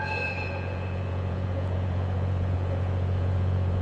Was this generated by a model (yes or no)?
yes